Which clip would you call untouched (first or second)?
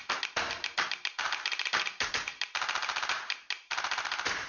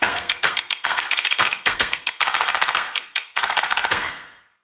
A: first